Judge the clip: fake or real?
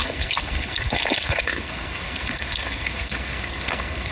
fake